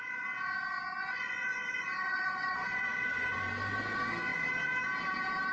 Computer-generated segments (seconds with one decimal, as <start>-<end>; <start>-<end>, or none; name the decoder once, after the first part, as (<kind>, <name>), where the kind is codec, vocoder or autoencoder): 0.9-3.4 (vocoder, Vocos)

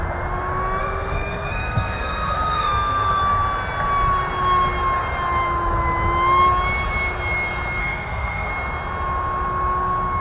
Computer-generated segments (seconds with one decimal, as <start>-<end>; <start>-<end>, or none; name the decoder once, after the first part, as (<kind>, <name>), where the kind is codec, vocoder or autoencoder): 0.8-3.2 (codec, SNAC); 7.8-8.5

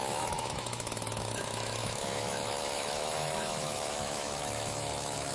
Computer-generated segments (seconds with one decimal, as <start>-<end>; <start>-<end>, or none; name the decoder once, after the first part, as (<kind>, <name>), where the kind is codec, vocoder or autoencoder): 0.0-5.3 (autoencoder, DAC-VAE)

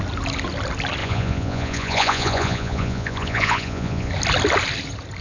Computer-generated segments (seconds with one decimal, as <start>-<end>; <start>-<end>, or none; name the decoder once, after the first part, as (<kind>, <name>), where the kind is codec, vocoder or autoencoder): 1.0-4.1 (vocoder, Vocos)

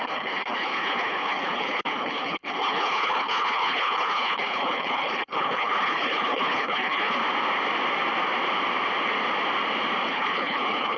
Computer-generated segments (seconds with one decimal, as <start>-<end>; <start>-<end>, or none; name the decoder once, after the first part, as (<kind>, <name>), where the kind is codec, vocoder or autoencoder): 0.0-7.2 (codec, HILCodec); 10.1-11.0

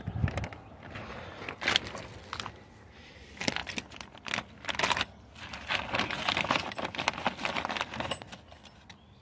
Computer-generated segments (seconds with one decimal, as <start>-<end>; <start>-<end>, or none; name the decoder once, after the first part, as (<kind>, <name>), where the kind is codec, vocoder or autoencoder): none

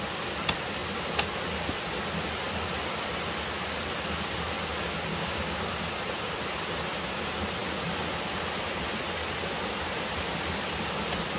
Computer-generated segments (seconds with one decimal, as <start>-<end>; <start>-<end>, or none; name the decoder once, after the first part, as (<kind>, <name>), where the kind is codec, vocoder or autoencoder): 5.1-5.6 (codec, DAC)